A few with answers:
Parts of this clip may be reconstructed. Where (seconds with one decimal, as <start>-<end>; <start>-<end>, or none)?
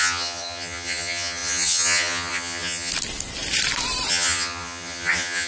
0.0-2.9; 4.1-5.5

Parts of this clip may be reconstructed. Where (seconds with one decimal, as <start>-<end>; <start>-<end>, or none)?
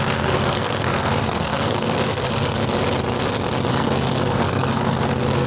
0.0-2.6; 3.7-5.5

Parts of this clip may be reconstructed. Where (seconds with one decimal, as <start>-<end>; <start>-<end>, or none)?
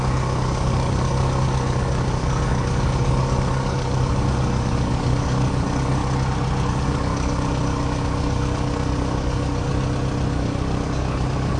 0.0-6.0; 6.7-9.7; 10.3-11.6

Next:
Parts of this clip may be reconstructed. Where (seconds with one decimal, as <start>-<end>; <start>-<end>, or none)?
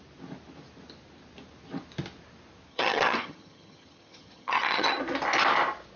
2.7-5.0